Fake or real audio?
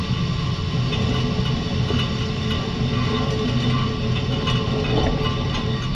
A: real